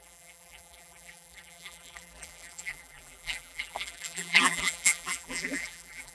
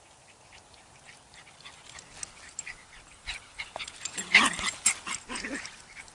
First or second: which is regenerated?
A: first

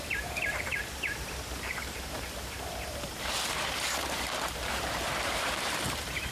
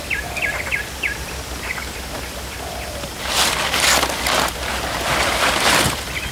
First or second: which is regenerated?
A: first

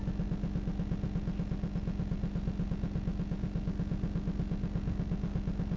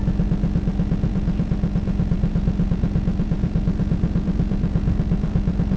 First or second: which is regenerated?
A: second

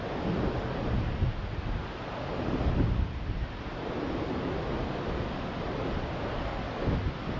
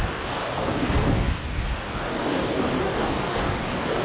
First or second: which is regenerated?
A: second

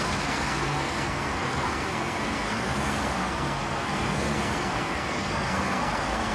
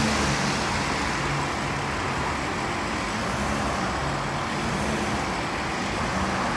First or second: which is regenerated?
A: first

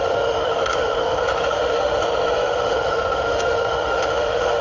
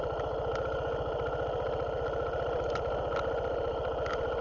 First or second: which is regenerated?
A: first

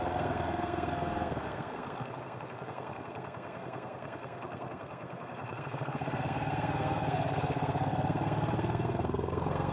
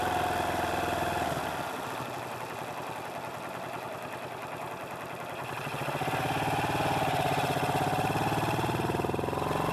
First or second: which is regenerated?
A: first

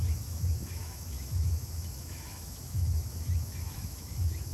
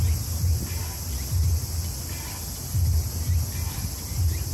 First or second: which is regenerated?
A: first